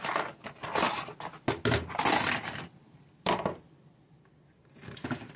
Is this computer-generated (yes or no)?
no